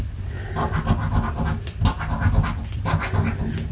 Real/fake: real